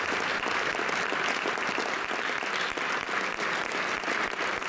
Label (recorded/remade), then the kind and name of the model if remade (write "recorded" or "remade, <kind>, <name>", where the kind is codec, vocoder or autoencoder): recorded